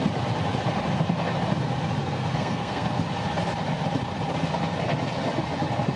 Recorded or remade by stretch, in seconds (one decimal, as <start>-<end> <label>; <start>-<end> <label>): 0.0-2.0 recorded; 2.0-3.0 remade; 3.0-6.0 recorded